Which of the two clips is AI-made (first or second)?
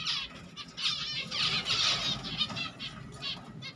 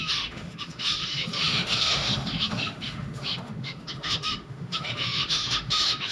second